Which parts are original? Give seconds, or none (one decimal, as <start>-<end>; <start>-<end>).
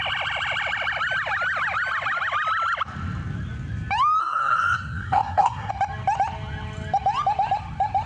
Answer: 0.0-4.2; 5.7-8.1